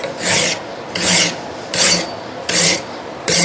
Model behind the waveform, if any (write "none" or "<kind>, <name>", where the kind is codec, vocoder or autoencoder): none